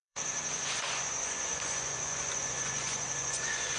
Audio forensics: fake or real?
fake